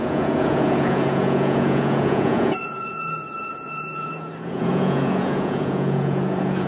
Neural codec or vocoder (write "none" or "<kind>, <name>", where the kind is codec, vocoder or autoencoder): vocoder, Vocos